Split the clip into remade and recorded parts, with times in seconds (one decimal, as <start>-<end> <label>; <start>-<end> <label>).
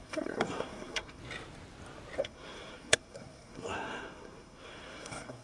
0.0-1.2 remade; 1.2-2.2 recorded; 2.2-5.4 remade